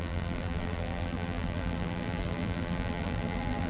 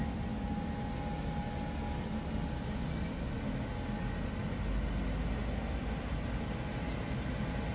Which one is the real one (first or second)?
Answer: second